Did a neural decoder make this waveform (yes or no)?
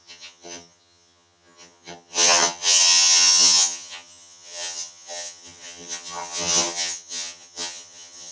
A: yes